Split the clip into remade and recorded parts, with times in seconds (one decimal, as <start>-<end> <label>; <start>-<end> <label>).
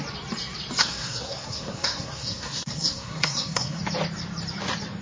0.0-0.8 recorded; 0.8-3.8 remade; 3.8-5.0 recorded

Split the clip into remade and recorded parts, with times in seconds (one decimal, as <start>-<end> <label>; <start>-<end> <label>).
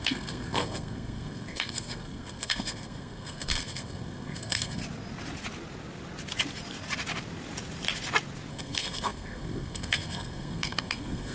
0.0-4.8 remade; 4.8-8.5 recorded; 8.5-11.3 remade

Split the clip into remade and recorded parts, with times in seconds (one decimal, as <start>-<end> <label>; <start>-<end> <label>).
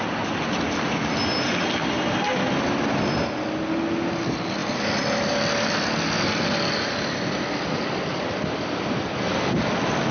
0.0-10.1 recorded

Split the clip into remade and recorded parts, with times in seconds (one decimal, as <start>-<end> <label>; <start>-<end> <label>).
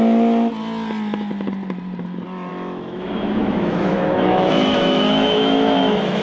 0.0-2.5 recorded; 2.5-6.2 remade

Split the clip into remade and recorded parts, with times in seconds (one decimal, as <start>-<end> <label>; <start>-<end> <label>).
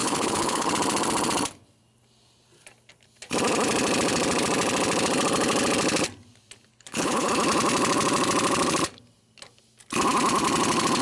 0.0-0.7 remade; 0.7-6.7 recorded; 6.7-7.3 remade; 7.3-11.0 recorded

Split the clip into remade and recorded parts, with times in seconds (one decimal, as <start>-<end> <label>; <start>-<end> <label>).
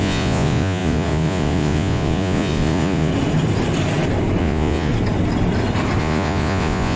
0.0-3.1 remade; 3.1-4.4 recorded; 4.4-4.9 remade; 4.9-6.0 recorded; 6.0-7.0 remade